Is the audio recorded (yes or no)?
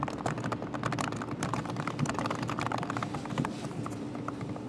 yes